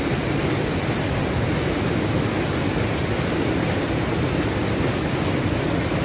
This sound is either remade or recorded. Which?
recorded